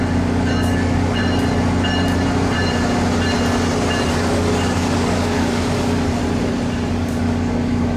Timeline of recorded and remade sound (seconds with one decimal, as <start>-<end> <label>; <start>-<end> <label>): 0.0-1.2 remade; 1.2-4.1 recorded; 4.1-6.2 remade; 6.2-6.9 recorded; 6.9-8.0 remade